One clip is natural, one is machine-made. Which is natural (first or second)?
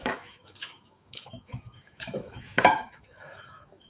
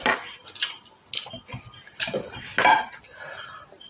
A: second